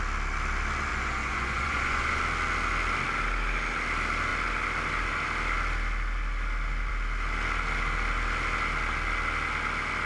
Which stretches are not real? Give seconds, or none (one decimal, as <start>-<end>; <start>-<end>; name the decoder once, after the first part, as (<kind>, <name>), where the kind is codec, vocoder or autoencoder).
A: 0.9-2.2 (vocoder, Vocos)

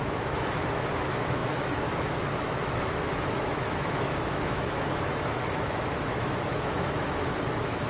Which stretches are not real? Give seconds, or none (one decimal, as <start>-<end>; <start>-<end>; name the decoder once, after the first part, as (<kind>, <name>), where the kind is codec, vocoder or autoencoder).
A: 0.0-7.9 (autoencoder, DAC-VAE)

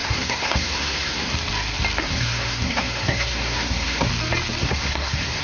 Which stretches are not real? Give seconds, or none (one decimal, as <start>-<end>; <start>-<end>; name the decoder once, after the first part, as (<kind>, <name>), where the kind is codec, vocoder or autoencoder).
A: 0.0-1.3 (codec, SNAC); 2.0-4.1; 4.6-5.4